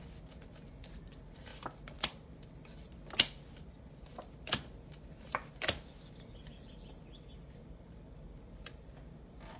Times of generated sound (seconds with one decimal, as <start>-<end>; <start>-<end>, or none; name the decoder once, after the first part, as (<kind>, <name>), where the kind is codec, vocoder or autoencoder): none